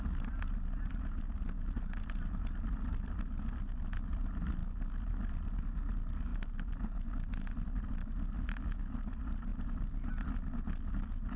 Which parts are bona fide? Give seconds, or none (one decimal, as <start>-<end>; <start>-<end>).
0.0-11.4